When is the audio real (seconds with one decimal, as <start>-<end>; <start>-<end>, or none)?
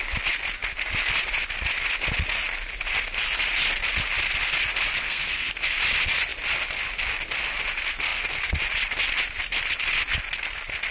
0.0-5.0; 5.5-10.9